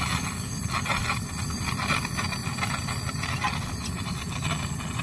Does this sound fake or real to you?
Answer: real